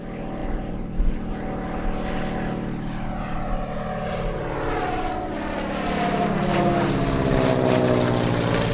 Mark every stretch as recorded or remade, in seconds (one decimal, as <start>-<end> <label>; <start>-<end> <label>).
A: 0.0-0.4 recorded; 0.4-1.3 remade; 1.3-8.7 recorded